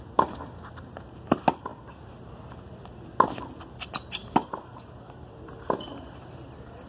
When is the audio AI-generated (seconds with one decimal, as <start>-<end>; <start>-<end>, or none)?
none